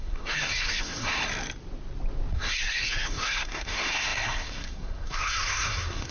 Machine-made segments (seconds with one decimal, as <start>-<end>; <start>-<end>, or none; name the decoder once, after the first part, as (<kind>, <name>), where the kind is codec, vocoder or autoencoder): 0.0-1.2 (codec, SNAC); 2.3-6.1